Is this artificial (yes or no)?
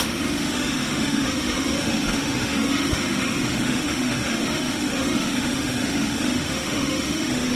yes